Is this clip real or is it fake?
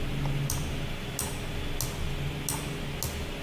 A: real